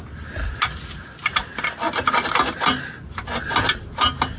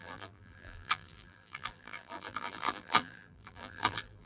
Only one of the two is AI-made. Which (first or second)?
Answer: second